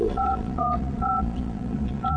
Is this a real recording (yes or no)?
no